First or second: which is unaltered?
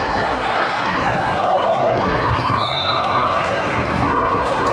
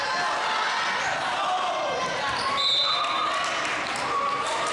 second